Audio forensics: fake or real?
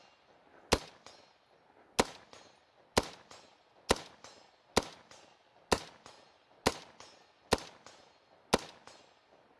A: real